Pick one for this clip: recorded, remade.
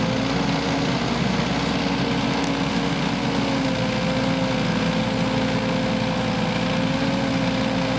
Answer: recorded